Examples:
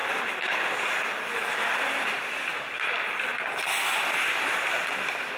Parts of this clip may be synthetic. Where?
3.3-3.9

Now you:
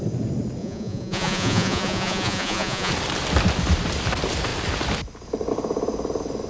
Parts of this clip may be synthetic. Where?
0.6-2.9

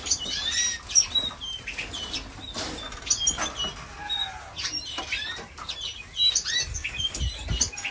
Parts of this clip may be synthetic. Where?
6.7-7.2

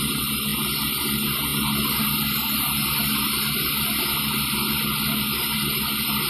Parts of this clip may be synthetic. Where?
none

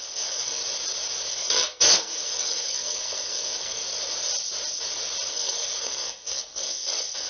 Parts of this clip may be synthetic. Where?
0.0-0.6; 1.3-3.8; 5.3-7.3

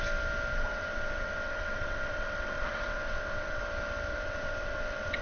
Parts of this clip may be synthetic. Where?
0.5-3.6; 4.1-5.2

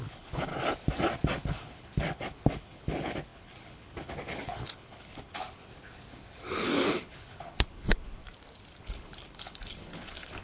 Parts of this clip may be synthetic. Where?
0.0-0.5; 1.5-5.7; 6.6-8.2; 8.8-10.4